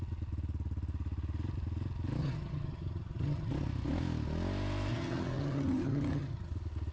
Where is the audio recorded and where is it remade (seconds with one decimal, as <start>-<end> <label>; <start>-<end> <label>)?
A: 0.0-2.2 recorded; 2.2-3.5 remade; 3.5-4.9 recorded; 4.9-6.5 remade; 6.5-6.9 recorded